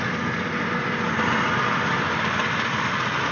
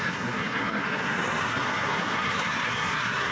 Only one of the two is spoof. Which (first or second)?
second